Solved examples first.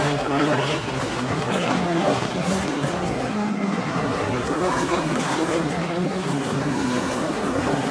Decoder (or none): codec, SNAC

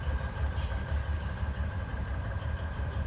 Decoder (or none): vocoder, BigVGAN v2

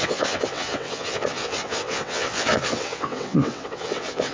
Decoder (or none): vocoder, WaveNeXt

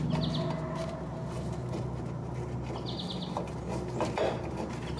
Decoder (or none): none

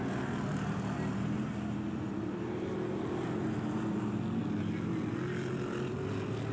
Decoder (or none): none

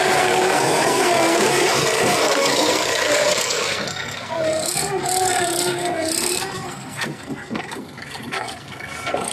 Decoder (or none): codec, SNAC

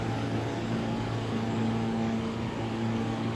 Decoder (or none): codec, DAC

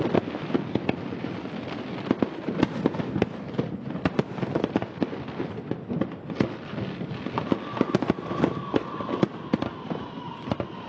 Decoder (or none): none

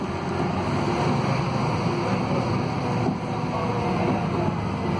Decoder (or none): none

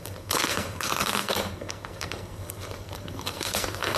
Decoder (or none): codec, SNAC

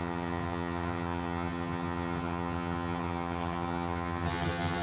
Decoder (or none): vocoder, HiFi-GAN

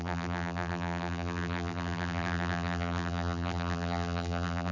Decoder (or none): vocoder, BigVGAN v2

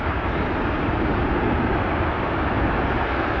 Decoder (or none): none